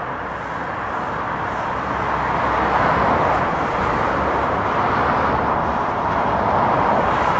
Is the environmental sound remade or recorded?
recorded